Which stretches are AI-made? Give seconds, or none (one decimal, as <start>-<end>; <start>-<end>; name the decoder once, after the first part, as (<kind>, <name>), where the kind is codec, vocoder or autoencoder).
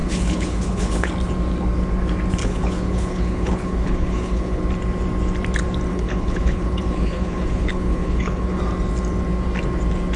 0.0-1.1 (codec, HILCodec); 2.4-4.6; 5.9-8.6